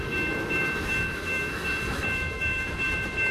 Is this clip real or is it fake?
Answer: fake